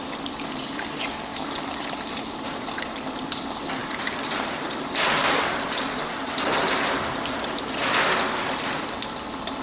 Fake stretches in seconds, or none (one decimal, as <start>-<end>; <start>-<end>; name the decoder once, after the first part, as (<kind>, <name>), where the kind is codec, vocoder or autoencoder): 1.3-2.0 (vocoder, BigVGAN v2); 3.8-7.7